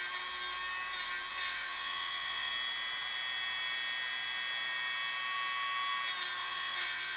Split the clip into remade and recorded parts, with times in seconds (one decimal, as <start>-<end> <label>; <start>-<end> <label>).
0.0-1.3 recorded; 1.3-2.5 remade; 2.5-6.4 recorded; 6.4-7.2 remade